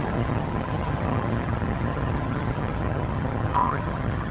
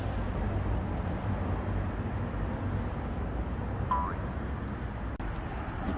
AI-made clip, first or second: first